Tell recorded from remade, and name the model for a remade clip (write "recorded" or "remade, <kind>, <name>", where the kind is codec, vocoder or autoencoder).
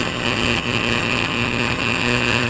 remade, vocoder, HiFi-GAN